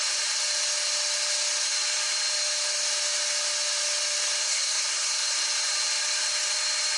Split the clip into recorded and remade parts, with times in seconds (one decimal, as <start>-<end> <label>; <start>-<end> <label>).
0.0-4.4 recorded; 4.4-5.2 remade; 5.2-7.0 recorded